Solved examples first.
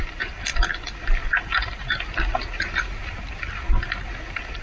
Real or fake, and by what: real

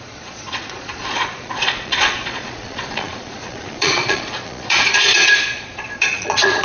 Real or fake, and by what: fake, vocoder, Vocos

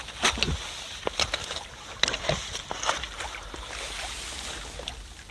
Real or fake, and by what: real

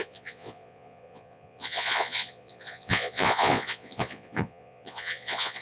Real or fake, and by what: fake, vocoder, Vocos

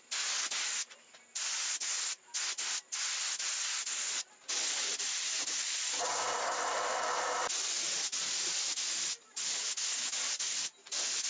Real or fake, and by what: real